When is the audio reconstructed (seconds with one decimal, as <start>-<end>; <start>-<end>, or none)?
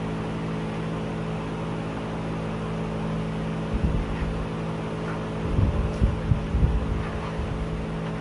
none